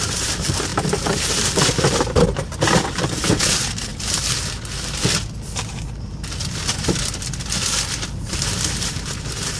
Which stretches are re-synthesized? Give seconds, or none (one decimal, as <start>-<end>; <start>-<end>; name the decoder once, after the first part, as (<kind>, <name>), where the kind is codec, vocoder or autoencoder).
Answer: 0.0-3.9 (vocoder, BigVGAN v2); 8.1-9.6